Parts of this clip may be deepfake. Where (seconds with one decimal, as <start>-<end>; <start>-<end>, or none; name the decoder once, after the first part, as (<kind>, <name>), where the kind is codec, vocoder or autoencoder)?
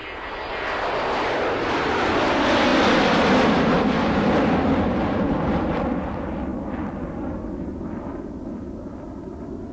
2.7-5.7 (vocoder, BigVGAN v2)